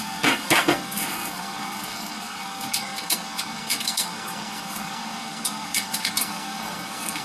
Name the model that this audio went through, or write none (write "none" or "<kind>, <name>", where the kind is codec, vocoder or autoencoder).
codec, SNAC